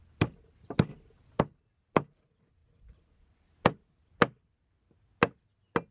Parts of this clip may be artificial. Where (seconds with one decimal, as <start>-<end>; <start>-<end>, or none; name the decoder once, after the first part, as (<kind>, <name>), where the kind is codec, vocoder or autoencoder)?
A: none